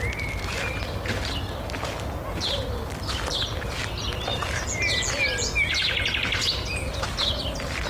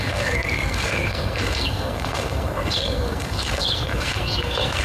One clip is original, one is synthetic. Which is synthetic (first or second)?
second